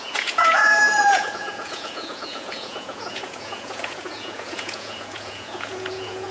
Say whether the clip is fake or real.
fake